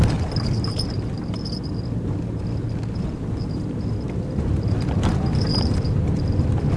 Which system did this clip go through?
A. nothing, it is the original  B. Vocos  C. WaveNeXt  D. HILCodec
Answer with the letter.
A